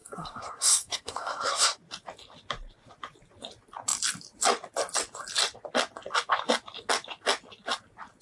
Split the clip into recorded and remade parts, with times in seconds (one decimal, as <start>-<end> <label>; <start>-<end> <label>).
0.0-1.8 remade; 1.8-8.2 recorded